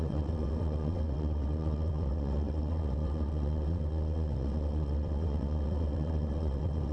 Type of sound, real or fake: fake